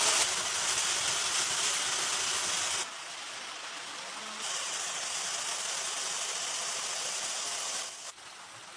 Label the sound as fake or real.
real